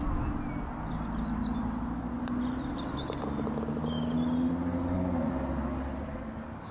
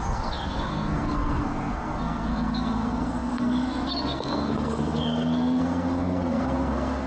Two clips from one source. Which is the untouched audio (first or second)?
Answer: first